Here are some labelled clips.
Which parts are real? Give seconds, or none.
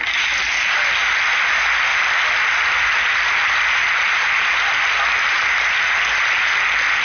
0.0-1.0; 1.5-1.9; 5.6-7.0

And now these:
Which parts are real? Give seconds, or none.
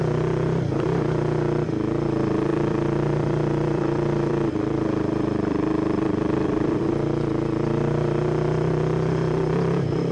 0.0-2.5; 6.9-10.1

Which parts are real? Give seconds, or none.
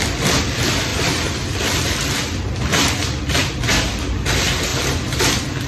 0.0-0.9; 2.1-4.7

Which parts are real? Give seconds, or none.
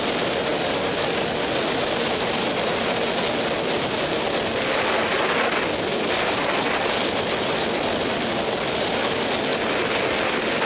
0.5-1.4; 2.7-3.7; 9.5-10.2